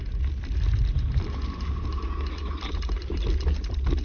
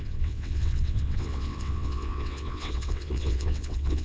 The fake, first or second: second